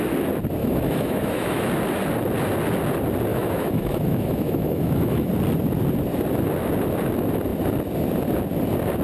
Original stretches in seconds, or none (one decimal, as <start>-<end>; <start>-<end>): 0.0-0.6; 1.7-3.3; 5.3-9.0